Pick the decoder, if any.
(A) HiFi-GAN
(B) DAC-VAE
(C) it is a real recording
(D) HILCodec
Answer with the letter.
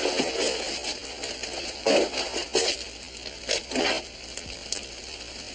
C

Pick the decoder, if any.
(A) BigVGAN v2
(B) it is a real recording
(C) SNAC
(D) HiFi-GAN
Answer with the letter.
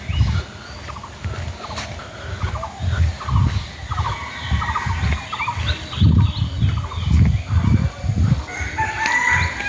B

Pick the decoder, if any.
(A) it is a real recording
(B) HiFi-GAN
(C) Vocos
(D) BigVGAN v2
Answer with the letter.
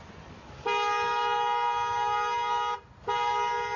A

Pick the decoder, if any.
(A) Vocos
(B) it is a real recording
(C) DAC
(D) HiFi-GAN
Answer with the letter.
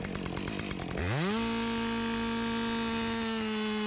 B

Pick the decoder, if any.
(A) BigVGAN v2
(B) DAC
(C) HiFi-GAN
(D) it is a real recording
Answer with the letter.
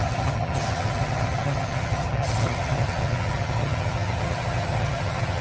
C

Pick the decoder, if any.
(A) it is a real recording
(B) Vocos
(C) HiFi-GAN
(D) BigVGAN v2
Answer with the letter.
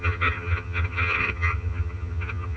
C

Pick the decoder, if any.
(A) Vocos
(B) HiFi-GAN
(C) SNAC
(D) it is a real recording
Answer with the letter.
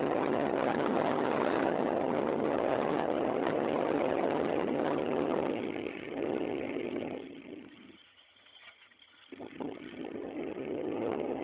B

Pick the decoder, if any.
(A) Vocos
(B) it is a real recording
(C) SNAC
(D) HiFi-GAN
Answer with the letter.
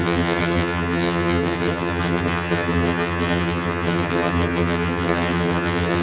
D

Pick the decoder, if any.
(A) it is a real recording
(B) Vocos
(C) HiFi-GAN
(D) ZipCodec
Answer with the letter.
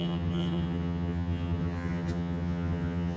C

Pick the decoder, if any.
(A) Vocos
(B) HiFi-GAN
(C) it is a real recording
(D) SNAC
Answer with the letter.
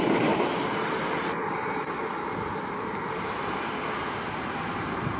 C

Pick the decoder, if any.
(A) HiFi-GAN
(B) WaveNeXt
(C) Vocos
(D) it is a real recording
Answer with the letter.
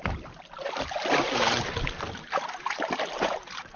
D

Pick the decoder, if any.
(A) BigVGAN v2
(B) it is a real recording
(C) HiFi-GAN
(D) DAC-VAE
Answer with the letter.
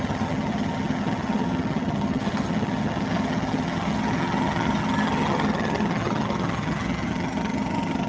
C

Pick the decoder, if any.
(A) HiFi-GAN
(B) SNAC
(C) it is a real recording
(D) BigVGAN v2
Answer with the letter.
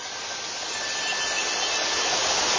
C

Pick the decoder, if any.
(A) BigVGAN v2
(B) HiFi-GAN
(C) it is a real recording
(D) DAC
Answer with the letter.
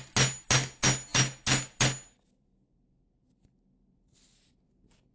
C